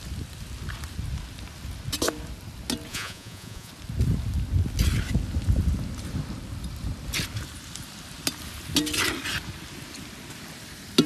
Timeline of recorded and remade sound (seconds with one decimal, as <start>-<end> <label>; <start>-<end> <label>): 0.0-2.9 recorded; 2.9-3.7 remade; 3.7-11.1 recorded